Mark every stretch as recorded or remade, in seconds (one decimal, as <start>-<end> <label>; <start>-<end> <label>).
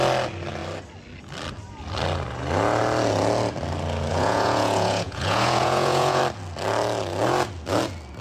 0.0-4.1 recorded; 4.1-6.2 remade; 6.2-8.2 recorded